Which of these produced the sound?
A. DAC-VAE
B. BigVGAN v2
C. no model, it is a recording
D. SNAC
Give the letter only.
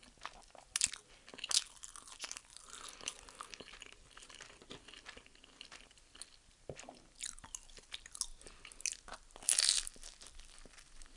C